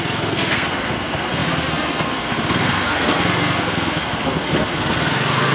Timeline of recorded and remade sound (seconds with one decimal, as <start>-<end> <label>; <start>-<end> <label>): 0.0-5.5 remade